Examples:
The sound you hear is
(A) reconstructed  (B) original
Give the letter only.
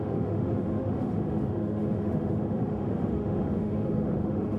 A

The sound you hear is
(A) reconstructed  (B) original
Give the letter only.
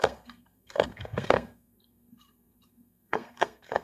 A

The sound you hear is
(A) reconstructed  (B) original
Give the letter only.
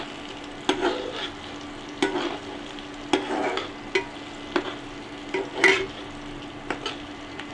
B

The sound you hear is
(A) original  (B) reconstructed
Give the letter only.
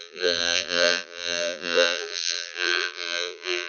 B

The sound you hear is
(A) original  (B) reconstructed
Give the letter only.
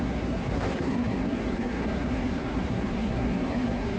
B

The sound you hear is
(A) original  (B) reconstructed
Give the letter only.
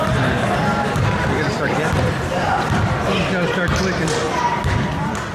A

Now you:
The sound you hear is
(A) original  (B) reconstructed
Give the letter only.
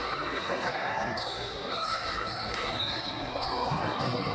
B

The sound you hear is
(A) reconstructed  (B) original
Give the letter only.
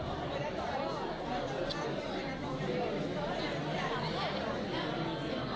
B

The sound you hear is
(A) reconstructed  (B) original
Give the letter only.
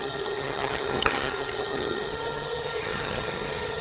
A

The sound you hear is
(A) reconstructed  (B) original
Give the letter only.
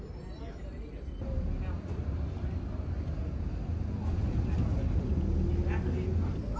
B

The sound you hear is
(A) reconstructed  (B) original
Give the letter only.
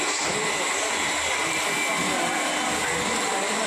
B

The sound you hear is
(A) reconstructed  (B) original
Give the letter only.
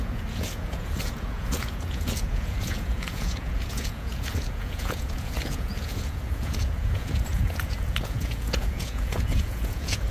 A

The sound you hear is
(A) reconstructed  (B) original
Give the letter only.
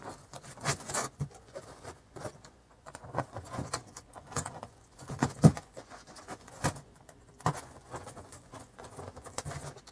A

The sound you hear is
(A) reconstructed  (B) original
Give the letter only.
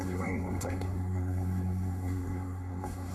A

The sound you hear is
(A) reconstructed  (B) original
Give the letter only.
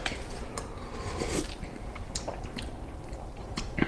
B